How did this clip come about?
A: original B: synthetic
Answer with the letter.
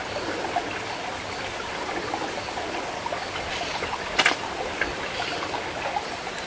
A